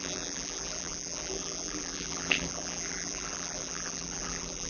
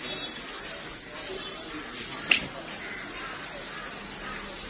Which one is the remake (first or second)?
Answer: first